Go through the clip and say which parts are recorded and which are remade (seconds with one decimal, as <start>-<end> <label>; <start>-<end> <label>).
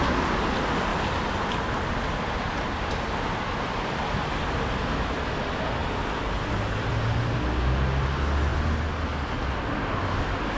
0.0-10.6 recorded